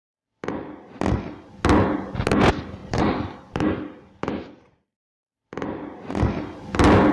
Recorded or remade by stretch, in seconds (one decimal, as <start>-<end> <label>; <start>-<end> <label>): 0.0-2.8 recorded; 2.8-6.2 remade; 6.2-7.1 recorded